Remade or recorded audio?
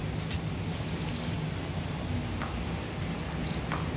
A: recorded